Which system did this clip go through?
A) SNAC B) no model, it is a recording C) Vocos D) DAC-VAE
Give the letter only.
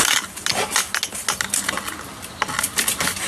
B